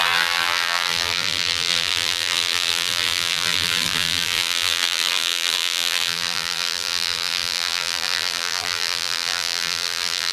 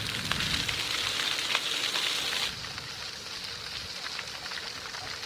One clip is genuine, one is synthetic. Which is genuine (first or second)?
second